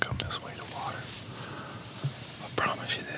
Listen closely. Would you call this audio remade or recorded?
remade